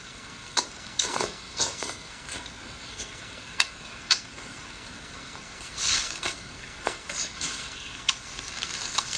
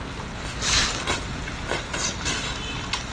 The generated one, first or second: first